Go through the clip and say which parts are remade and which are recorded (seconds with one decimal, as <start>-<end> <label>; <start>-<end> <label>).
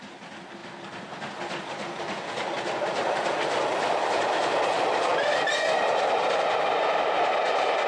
0.0-7.9 recorded